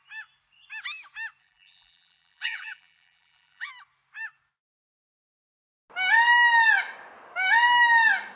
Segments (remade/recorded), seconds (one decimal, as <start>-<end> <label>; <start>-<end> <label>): 0.0-1.4 recorded; 1.4-3.7 remade; 3.7-8.4 recorded